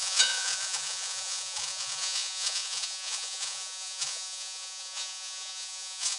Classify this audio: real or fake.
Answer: fake